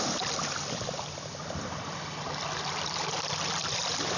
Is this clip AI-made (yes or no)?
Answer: no